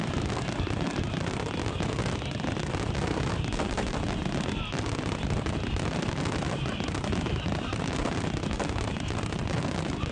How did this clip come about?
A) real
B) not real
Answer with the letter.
A